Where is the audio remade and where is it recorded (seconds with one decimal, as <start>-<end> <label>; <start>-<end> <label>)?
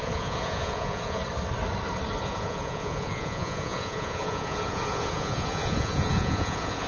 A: 0.0-1.2 remade; 1.2-2.2 recorded; 2.2-6.9 remade